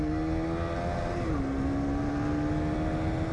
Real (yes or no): yes